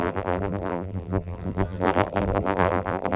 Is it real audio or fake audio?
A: fake